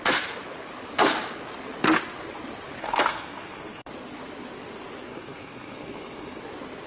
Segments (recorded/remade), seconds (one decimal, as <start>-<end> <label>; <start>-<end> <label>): 0.0-2.8 recorded; 2.8-3.9 remade; 3.9-5.1 recorded; 5.1-6.4 remade; 6.4-6.9 recorded